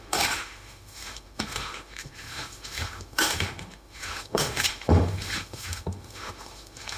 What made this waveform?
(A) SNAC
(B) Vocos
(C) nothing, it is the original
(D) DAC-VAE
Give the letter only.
D